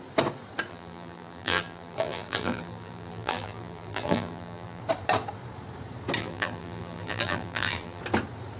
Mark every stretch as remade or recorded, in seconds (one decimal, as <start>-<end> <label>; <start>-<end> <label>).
0.0-0.7 recorded; 0.7-4.8 remade; 4.8-6.2 recorded; 6.2-8.0 remade; 8.0-8.6 recorded